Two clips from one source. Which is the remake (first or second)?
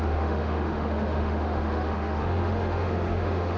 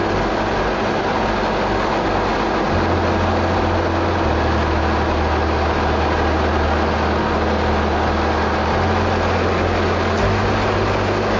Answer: first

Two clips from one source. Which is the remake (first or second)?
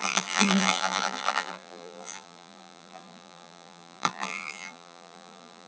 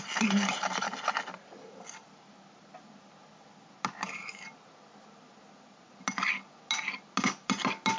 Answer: first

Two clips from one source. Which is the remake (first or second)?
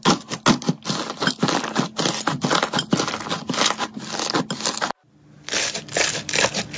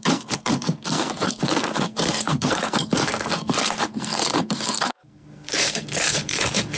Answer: second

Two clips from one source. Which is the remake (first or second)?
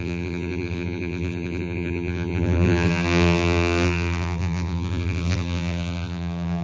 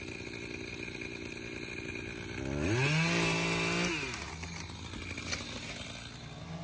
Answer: first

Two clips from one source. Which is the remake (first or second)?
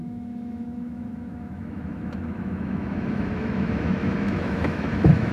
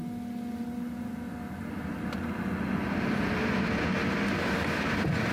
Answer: first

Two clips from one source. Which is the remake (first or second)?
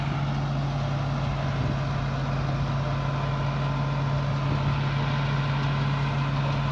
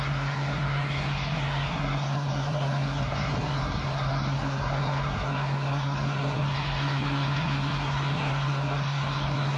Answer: second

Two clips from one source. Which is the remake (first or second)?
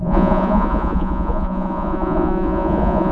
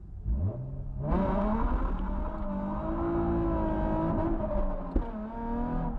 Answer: first